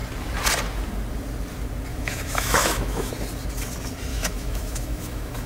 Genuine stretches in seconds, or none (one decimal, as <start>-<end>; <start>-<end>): 0.0-1.9; 3.1-4.1